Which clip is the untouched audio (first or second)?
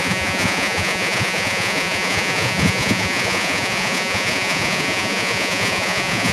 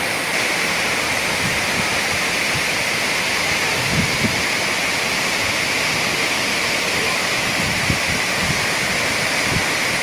second